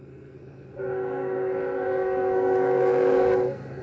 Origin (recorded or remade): remade